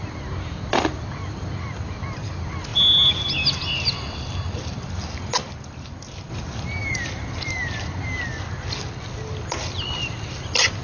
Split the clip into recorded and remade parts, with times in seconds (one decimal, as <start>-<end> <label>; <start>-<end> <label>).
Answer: 0.0-6.8 recorded; 6.8-8.2 remade; 8.2-10.8 recorded